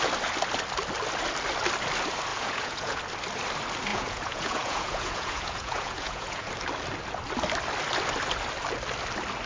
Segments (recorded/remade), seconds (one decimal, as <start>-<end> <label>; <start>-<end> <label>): 0.0-2.3 recorded; 2.3-3.0 remade; 3.0-3.9 recorded; 3.9-6.5 remade; 6.5-9.5 recorded